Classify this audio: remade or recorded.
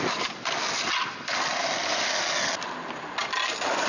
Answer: recorded